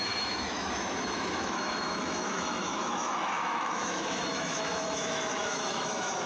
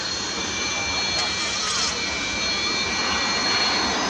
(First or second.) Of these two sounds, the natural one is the second